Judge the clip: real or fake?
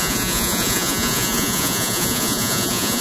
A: fake